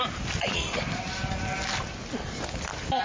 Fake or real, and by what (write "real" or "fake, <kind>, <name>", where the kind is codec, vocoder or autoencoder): real